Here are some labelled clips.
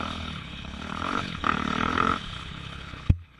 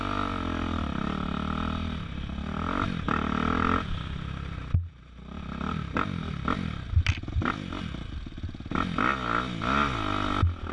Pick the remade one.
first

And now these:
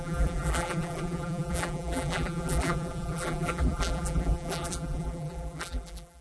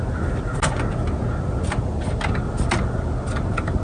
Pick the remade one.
first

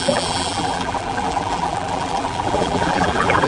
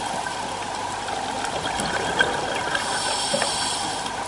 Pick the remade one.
first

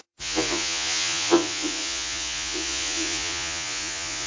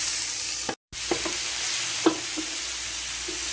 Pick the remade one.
first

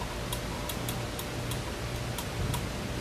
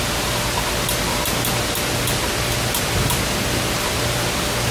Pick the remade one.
second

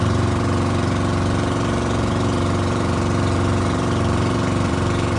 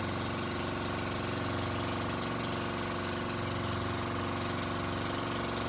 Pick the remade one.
first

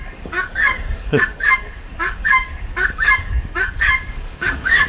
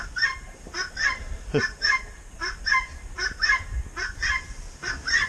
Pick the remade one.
first